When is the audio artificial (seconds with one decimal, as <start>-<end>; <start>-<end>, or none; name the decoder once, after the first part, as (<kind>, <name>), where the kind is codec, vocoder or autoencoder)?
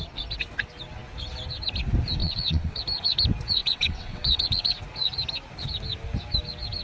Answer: 2.2-2.8 (vocoder, WaveNeXt); 3.6-4.8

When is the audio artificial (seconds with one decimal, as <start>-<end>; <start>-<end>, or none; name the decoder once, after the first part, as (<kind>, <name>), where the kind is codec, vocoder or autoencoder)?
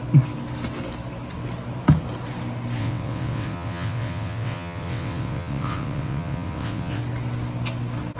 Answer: 2.8-7.0 (vocoder, WaveNeXt)